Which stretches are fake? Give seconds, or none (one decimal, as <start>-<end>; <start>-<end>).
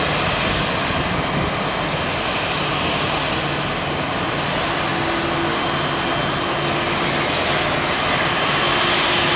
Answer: none